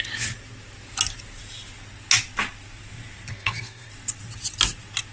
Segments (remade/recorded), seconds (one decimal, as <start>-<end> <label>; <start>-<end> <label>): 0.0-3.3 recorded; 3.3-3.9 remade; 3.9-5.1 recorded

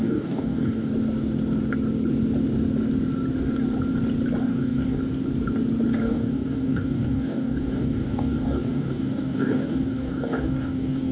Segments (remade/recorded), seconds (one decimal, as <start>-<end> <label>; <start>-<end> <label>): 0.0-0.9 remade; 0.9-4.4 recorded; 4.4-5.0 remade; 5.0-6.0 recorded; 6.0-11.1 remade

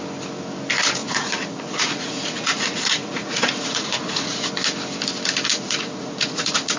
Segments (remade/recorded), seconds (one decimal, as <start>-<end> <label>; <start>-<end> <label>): 0.0-1.0 recorded; 1.0-4.5 remade; 4.5-5.5 recorded; 5.5-6.8 remade